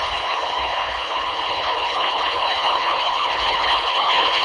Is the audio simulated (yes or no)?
yes